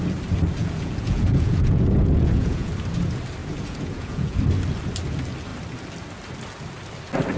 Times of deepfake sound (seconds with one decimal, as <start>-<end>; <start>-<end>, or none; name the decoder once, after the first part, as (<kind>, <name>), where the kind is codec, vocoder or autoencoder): 0.6-2.7 (vocoder, Vocos); 3.4-4.4